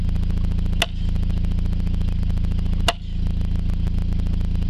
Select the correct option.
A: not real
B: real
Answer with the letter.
B